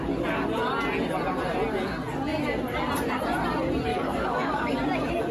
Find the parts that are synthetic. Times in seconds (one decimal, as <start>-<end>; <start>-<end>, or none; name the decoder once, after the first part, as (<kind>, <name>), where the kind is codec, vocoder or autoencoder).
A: 3.9-4.7 (codec, DAC)